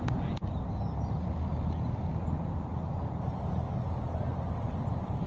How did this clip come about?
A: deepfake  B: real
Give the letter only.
B